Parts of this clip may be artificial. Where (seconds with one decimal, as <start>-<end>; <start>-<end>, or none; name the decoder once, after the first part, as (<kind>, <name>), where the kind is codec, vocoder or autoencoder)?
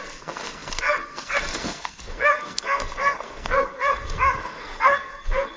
0.0-5.6 (codec, SNAC)